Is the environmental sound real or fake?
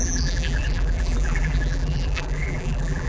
fake